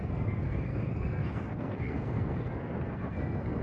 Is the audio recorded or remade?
remade